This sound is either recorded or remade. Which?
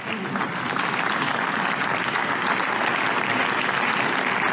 recorded